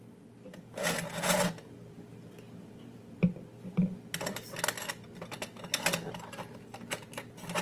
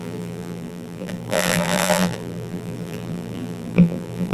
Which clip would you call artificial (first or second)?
second